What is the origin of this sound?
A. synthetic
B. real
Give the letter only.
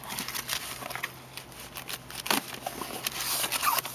B